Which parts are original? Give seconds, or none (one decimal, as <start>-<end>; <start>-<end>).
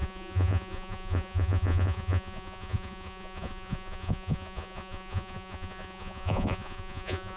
none